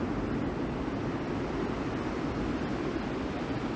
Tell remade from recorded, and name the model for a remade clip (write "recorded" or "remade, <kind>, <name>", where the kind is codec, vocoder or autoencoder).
recorded